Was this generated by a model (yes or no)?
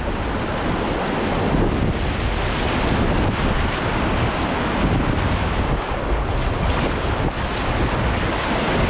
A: no